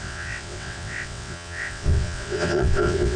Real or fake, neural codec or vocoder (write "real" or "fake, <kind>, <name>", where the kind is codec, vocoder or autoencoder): fake, vocoder, WaveNeXt